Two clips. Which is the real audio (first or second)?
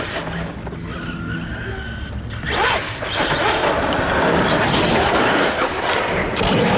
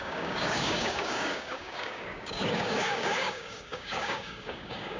first